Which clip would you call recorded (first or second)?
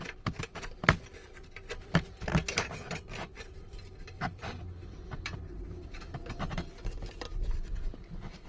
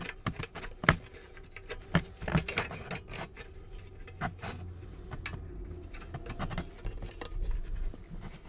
second